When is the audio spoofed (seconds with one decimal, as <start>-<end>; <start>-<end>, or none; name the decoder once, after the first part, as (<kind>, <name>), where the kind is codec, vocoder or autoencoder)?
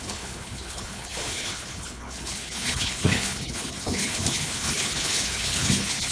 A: 0.0-6.1 (codec, HILCodec)